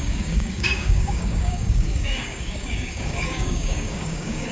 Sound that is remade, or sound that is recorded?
remade